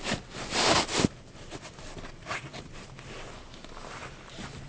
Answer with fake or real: real